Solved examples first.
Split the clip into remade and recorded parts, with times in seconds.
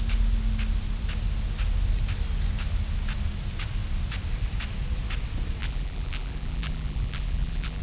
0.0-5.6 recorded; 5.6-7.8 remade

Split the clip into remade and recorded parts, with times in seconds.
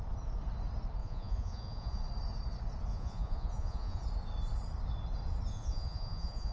0.0-1.0 recorded; 1.0-2.0 remade; 2.0-2.9 recorded; 2.9-4.0 remade; 4.0-5.5 recorded; 5.5-6.5 remade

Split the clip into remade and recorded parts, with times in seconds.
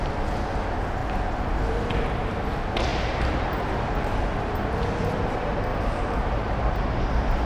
0.0-1.0 recorded; 1.0-1.7 remade; 1.7-2.9 recorded; 2.9-4.1 remade; 4.1-5.7 recorded; 5.7-6.6 remade; 6.6-7.5 recorded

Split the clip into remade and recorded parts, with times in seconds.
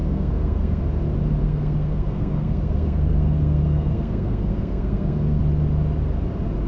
0.0-0.8 remade; 0.8-1.4 recorded; 1.4-5.4 remade; 5.4-6.7 recorded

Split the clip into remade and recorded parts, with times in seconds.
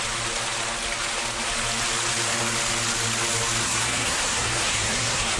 0.0-3.6 recorded; 3.6-5.4 remade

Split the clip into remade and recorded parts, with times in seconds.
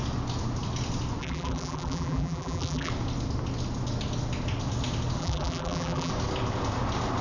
0.0-1.2 recorded; 1.2-2.9 remade; 2.9-5.2 recorded; 5.2-6.1 remade; 6.1-7.2 recorded